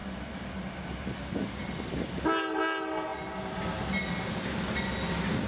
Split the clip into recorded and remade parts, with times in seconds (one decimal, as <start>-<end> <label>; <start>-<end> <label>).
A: 0.0-5.5 recorded